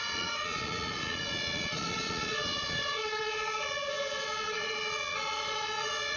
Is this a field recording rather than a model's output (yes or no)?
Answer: no